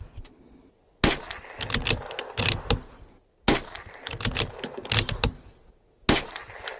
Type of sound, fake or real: real